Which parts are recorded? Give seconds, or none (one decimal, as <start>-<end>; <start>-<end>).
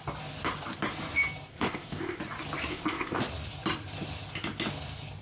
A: 0.0-1.5; 2.2-2.7; 3.2-5.2